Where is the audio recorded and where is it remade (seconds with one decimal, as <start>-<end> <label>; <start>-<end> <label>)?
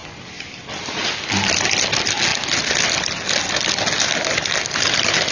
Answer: 0.0-5.3 recorded